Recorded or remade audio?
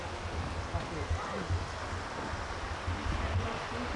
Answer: recorded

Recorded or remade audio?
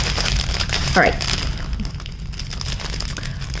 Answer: recorded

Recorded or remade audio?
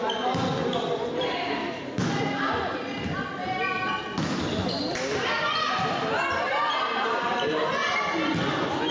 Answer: recorded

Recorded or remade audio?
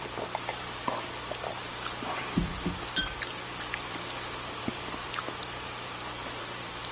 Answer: remade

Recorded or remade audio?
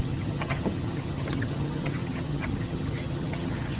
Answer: remade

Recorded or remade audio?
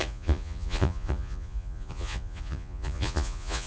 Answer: remade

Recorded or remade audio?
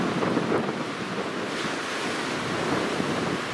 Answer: recorded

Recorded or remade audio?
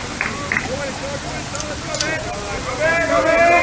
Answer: recorded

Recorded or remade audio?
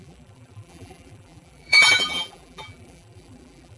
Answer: remade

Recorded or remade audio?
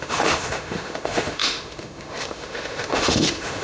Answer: remade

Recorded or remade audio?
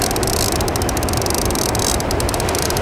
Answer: recorded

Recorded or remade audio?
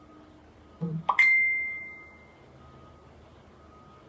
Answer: recorded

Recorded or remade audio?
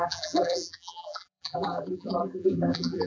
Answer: remade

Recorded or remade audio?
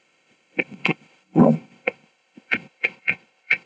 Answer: remade